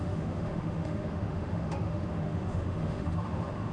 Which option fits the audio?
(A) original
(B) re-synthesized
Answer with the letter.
B